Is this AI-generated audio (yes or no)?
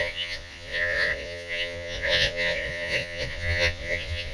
yes